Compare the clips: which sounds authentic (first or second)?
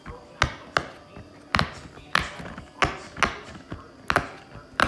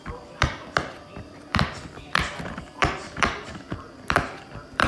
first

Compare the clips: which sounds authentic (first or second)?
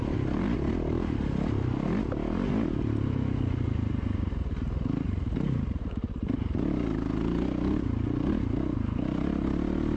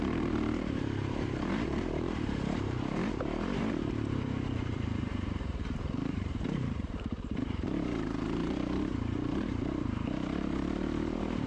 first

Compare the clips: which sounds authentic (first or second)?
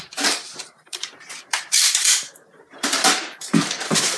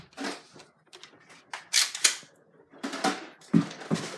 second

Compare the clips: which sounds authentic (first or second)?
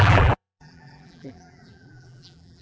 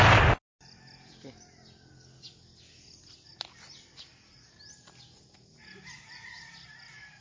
second